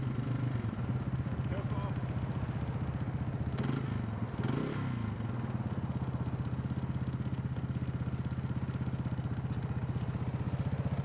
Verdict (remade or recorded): recorded